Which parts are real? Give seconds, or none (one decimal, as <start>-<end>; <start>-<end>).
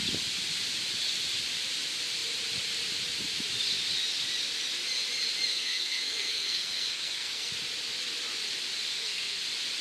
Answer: 0.0-5.5; 7.5-8.9; 9.4-9.8